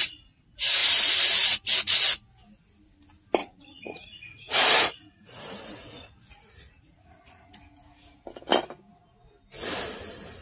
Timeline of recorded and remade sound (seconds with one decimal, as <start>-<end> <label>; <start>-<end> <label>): 0.0-3.4 recorded; 3.4-7.5 remade; 7.5-10.4 recorded